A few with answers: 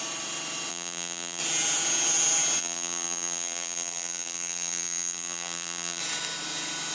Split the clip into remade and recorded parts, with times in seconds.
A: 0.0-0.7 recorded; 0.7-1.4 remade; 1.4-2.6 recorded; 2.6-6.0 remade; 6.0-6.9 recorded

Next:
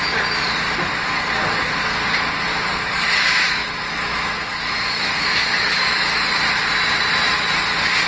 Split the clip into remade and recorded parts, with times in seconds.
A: 0.0-2.5 recorded; 2.5-6.2 remade; 6.2-8.1 recorded

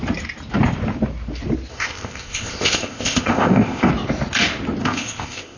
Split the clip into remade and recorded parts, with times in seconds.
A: 0.0-1.7 recorded; 1.7-3.9 remade; 3.9-4.8 recorded; 4.8-5.6 remade

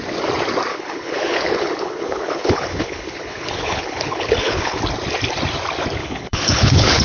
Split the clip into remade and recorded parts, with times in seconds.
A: 0.0-0.7 recorded; 0.7-4.8 remade; 4.8-6.0 recorded; 6.0-7.0 remade

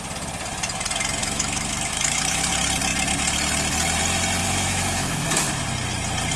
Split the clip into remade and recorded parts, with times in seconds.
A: 0.0-1.2 recorded; 1.2-2.5 remade; 2.5-4.4 recorded; 4.4-5.6 remade; 5.6-6.4 recorded

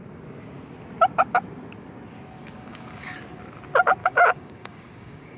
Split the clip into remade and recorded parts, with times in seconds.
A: 0.0-2.4 recorded; 2.4-3.1 remade; 3.1-4.0 recorded; 4.0-5.4 remade